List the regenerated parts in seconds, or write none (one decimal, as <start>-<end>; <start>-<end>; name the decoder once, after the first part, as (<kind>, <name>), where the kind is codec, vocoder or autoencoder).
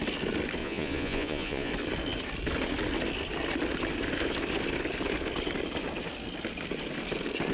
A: 0.6-1.7 (vocoder, Vocos)